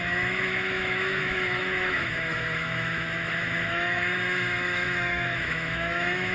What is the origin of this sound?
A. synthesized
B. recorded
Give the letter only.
A